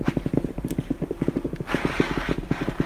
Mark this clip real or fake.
real